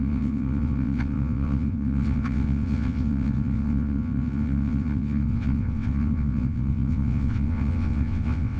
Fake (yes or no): yes